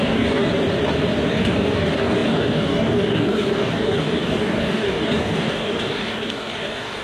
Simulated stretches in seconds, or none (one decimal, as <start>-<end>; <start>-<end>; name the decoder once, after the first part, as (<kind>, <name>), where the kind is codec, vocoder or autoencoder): 0.0-0.5 (codec, DAC); 1.3-7.0